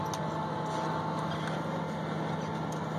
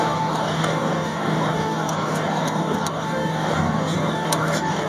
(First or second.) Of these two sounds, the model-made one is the second